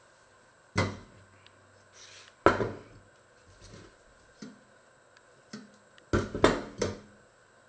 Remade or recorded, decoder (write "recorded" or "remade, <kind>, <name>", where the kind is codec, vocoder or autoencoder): recorded